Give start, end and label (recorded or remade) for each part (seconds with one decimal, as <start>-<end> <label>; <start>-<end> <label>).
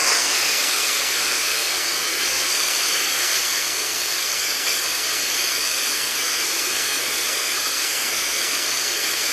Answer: 0.0-9.3 remade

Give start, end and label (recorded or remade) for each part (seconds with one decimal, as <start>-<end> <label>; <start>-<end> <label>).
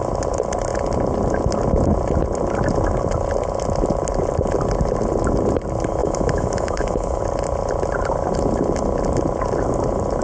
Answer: 0.0-6.0 recorded; 6.0-7.2 remade; 7.2-10.2 recorded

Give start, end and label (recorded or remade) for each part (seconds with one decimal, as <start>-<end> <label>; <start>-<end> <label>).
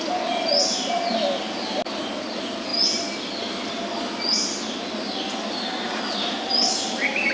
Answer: 0.0-7.3 recorded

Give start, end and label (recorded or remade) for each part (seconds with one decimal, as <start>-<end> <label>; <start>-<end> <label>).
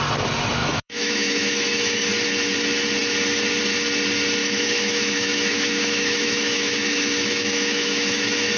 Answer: 0.0-0.6 recorded; 0.6-2.1 remade; 2.1-4.4 recorded; 4.4-8.2 remade; 8.2-8.6 recorded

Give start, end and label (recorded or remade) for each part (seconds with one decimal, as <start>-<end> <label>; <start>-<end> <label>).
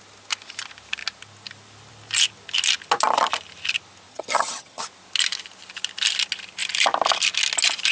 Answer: 0.0-4.1 recorded; 4.1-4.8 remade; 4.8-7.9 recorded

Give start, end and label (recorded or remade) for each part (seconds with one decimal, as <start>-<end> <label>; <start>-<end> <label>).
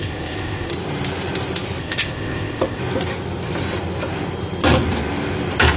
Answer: 0.0-0.7 remade; 0.7-1.8 recorded; 1.8-2.8 remade; 2.8-5.8 recorded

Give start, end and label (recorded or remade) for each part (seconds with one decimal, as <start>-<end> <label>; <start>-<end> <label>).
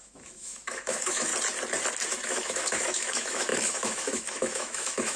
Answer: 0.0-1.3 remade; 1.3-2.1 recorded; 2.1-5.2 remade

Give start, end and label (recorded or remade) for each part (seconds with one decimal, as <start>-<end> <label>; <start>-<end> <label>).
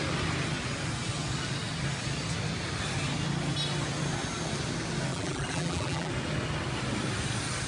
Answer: 0.0-5.1 recorded; 5.1-6.1 remade; 6.1-7.7 recorded